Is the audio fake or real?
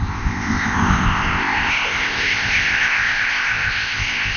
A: fake